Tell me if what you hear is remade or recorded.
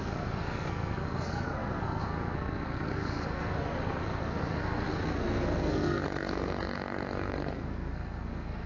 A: remade